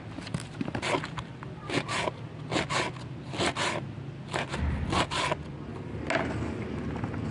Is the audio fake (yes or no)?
no